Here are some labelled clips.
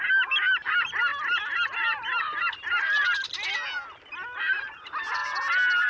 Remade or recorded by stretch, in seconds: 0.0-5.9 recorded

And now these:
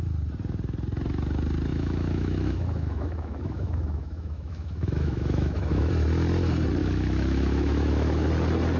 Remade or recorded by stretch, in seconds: 0.0-1.7 recorded; 1.7-5.9 remade; 5.9-6.8 recorded; 6.8-8.3 remade; 8.3-8.8 recorded

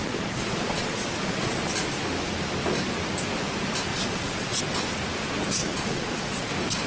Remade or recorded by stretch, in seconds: 0.0-1.5 remade; 1.5-3.9 recorded; 3.9-4.6 remade; 4.6-5.6 recorded; 5.6-6.5 remade; 6.5-6.9 recorded